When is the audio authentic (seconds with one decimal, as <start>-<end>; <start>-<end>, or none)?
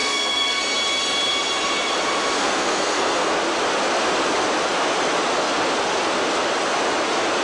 0.6-2.4; 3.3-7.4